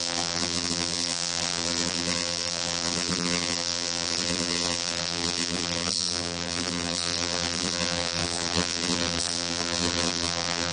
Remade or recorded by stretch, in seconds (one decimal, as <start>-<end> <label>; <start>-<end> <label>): 0.0-10.7 remade